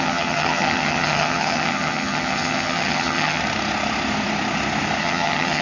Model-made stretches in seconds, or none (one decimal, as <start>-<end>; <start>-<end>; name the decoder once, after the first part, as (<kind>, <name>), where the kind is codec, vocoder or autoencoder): 0.0-3.4 (vocoder, HiFi-GAN); 5.0-5.6